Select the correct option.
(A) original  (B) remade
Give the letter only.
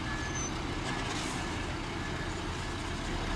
A